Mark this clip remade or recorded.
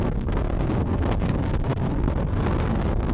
remade